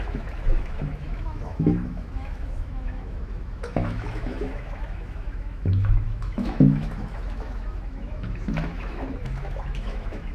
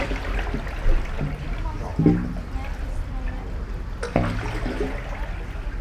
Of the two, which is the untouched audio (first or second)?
second